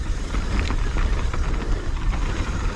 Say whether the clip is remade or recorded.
recorded